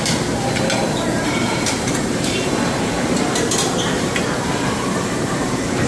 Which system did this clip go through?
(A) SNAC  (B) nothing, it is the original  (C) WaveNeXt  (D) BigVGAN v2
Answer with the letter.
D